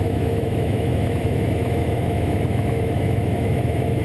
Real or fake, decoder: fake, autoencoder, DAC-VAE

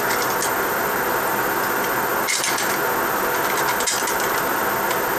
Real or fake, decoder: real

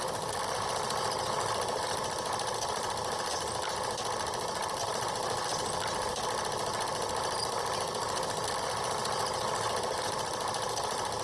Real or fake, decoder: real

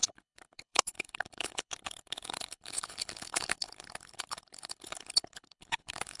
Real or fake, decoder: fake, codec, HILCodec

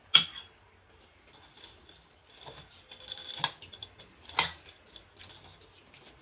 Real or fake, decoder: real